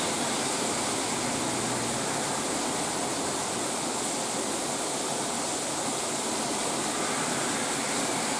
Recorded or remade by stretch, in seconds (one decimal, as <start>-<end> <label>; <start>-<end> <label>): 0.0-8.4 recorded